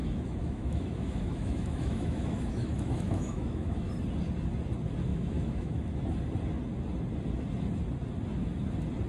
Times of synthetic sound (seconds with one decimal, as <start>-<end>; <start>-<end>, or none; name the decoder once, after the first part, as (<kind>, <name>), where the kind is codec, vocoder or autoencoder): 0.0-3.9 (autoencoder, DAC-VAE); 5.1-5.8